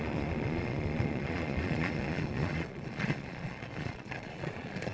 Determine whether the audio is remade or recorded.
remade